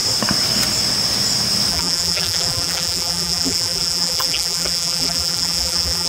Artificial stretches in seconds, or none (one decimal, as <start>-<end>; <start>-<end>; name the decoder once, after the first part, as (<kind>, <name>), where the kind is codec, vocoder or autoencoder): 1.7-6.1 (vocoder, BigVGAN v2)